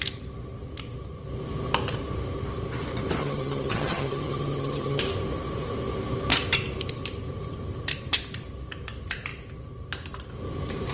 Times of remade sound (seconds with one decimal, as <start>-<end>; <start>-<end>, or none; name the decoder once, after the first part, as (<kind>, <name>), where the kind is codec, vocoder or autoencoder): 3.2-5.0 (vocoder, HiFi-GAN)